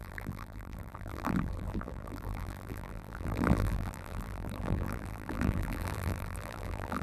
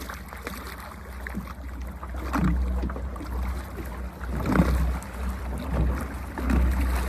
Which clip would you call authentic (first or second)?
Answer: second